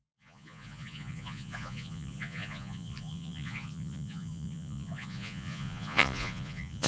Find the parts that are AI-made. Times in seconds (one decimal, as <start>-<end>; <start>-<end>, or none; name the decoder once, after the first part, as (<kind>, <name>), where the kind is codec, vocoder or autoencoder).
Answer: 0.0-6.9 (vocoder, Vocos)